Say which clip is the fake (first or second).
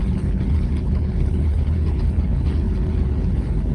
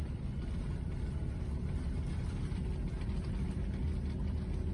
first